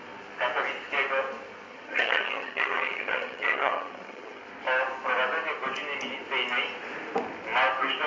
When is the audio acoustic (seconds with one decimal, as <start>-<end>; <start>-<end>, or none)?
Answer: 0.0-1.7; 4.4-8.1